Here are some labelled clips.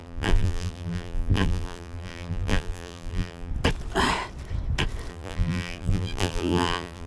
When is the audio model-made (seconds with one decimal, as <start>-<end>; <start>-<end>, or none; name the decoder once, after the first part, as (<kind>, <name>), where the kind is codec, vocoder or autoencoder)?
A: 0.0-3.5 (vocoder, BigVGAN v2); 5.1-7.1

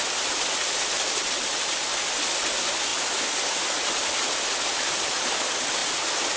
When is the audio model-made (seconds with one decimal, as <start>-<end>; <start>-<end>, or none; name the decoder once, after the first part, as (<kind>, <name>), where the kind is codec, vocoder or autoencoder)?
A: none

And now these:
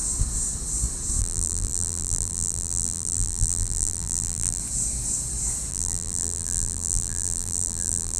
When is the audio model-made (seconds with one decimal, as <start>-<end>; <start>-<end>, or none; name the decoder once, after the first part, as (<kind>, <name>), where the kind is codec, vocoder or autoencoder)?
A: 1.2-4.6 (vocoder, BigVGAN v2); 5.7-8.2

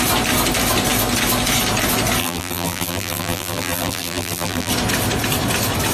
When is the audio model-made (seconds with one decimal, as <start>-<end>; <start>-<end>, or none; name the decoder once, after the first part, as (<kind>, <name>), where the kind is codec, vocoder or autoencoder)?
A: 2.2-4.7 (vocoder, BigVGAN v2)

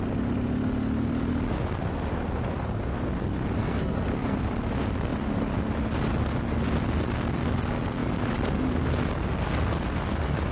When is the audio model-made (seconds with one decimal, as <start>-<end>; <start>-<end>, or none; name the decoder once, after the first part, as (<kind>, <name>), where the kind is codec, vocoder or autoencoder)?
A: 3.6-4.4 (codec, SNAC)

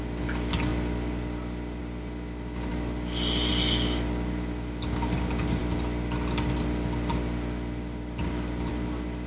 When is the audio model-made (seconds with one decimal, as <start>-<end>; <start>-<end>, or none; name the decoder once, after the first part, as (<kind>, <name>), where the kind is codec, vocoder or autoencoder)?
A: none

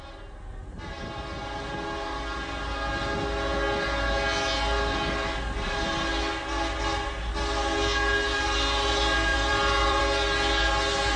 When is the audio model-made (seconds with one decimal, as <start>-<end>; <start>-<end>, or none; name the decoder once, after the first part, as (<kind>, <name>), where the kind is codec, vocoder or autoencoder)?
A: 9.3-10.0 (vocoder, BigVGAN v2)